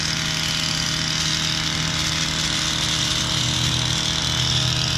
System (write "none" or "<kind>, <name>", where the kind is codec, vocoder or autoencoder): none